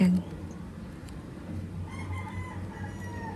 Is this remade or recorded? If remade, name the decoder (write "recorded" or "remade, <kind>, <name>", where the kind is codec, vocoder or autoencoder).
recorded